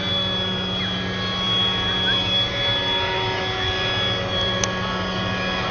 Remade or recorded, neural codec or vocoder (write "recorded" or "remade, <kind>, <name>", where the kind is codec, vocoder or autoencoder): recorded